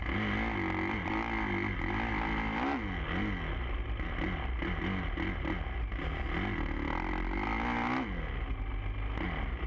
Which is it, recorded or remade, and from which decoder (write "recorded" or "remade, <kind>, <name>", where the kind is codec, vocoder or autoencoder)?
recorded